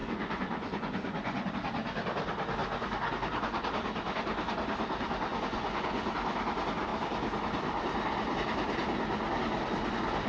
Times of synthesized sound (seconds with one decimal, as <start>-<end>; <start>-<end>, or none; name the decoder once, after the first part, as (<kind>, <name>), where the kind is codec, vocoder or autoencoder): 0.0-1.5 (vocoder, Vocos); 5.3-6.1